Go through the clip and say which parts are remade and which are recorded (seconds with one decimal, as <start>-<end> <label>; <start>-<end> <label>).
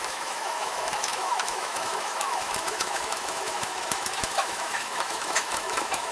0.0-6.1 remade